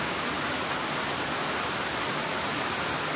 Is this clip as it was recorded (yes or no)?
yes